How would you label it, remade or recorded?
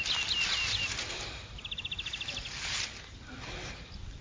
recorded